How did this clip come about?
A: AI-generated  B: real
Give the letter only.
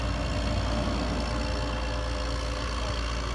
B